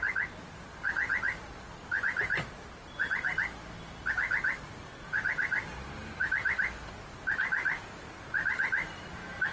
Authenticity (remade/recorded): recorded